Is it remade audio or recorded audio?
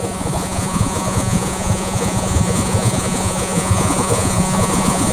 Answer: remade